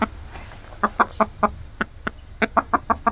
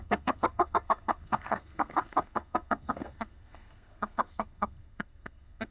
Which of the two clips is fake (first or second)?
second